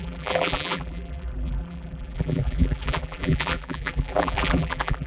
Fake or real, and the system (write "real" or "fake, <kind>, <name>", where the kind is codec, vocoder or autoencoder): fake, vocoder, BigVGAN v2